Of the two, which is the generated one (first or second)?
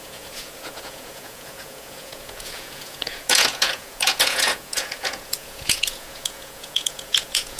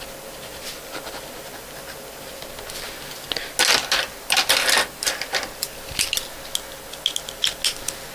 first